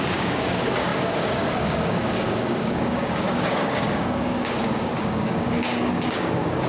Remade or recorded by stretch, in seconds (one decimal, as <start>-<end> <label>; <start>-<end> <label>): 0.0-6.7 remade